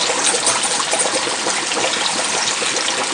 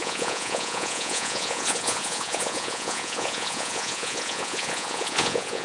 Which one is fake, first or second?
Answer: second